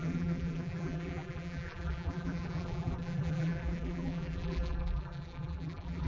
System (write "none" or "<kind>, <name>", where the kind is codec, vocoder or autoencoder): vocoder, BigVGAN v2